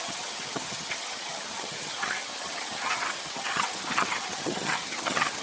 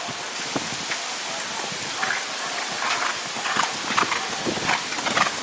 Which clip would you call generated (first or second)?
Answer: first